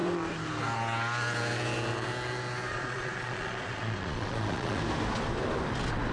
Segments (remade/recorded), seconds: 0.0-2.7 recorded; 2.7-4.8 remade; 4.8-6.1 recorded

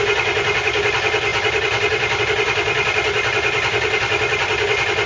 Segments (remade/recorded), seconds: 0.0-5.1 recorded

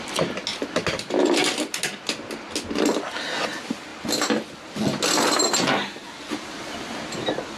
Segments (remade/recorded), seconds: 0.0-7.6 recorded

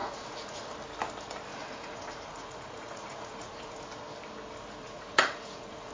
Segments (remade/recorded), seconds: 0.0-0.6 remade; 0.6-1.5 recorded; 1.5-3.8 remade; 3.8-4.8 recorded; 4.8-5.9 remade

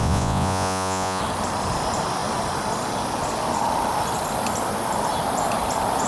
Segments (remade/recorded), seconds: 0.0-1.2 remade; 1.2-6.1 recorded

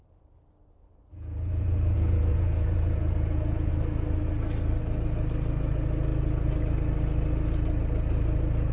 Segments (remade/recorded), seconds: 0.0-1.1 recorded; 1.1-3.7 remade; 3.7-8.7 recorded

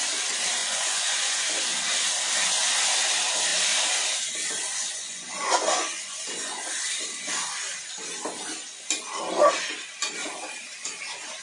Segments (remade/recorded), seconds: 0.0-0.6 recorded; 0.6-1.6 remade; 1.6-4.8 recorded; 4.8-6.6 remade; 6.6-11.4 recorded

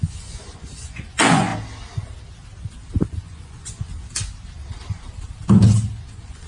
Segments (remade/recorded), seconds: 0.0-1.5 remade; 1.5-3.0 recorded; 3.0-3.9 remade; 3.9-6.0 recorded; 6.0-6.5 remade